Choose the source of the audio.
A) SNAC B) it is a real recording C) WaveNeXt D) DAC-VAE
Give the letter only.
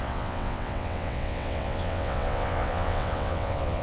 C